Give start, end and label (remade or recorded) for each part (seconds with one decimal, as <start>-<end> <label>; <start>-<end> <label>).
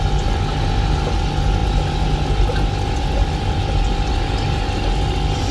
0.0-5.5 recorded